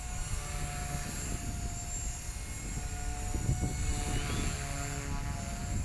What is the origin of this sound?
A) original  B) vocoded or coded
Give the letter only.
A